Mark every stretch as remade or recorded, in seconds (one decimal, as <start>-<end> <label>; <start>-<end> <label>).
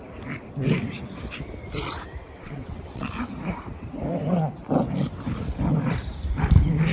0.0-2.2 recorded; 2.2-3.1 remade; 3.1-6.9 recorded